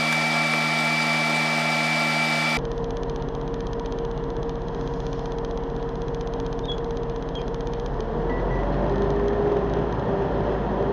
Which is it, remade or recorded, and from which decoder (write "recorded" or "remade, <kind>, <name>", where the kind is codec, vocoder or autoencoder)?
recorded